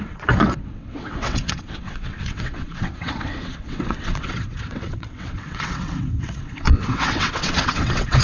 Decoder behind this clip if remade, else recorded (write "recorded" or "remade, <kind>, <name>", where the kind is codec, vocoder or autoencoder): remade, vocoder, WaveNeXt